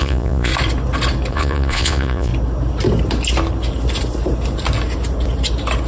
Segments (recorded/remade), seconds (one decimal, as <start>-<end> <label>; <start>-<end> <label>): 0.0-0.5 remade; 0.5-1.3 recorded; 1.3-2.3 remade; 2.3-5.9 recorded